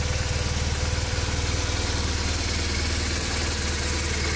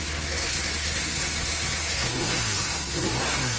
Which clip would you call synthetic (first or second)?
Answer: second